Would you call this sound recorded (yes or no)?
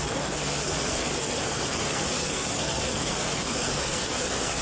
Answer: no